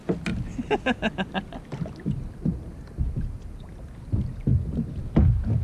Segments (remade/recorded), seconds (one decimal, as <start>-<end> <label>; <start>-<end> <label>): 0.0-5.6 recorded